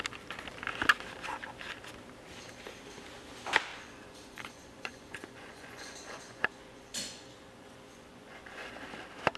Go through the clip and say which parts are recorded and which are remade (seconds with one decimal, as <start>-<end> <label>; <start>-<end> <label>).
0.0-3.7 recorded; 3.7-8.7 remade; 8.7-9.4 recorded